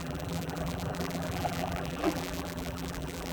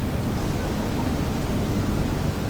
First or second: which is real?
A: second